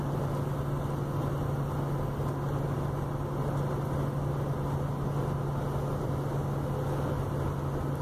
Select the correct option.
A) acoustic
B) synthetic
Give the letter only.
A